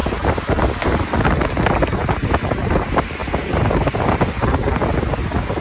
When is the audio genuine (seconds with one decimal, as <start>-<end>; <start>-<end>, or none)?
0.0-5.6